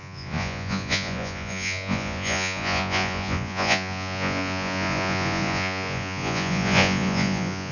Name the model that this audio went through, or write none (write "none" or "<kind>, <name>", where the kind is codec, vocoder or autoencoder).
vocoder, Vocos